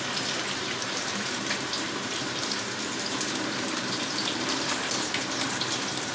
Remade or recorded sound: remade